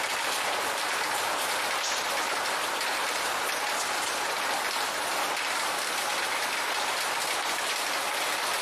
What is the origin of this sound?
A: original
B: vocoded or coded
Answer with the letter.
A